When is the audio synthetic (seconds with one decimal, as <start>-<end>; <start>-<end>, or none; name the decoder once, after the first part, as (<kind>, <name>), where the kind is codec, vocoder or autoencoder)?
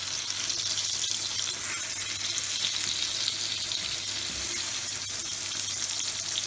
none